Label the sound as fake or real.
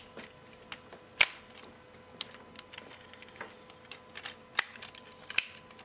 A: real